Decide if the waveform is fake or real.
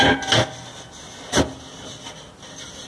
real